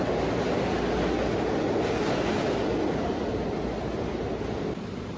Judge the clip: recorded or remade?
recorded